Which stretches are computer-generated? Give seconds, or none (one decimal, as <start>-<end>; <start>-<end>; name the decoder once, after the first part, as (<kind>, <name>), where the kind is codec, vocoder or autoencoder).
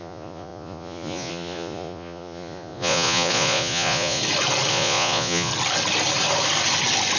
0.0-4.2 (vocoder, Vocos); 4.7-5.5